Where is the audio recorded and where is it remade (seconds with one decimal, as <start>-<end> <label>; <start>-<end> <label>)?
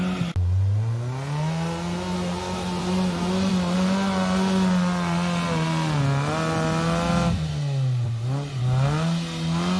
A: 0.0-9.8 recorded